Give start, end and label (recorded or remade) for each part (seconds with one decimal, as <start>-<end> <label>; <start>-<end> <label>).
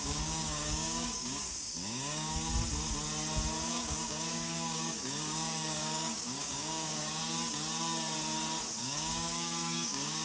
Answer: 0.0-2.5 remade; 2.5-3.7 recorded; 3.7-7.2 remade; 7.2-8.8 recorded; 8.8-10.2 remade